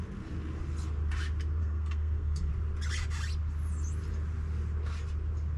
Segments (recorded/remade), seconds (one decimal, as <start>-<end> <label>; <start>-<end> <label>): 0.0-1.6 recorded; 1.6-2.5 remade; 2.5-5.6 recorded